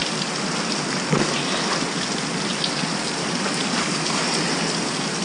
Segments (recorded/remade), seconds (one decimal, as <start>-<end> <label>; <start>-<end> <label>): 0.0-3.2 recorded; 3.2-4.2 remade; 4.2-5.2 recorded